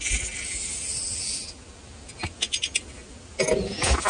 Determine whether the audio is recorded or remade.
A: recorded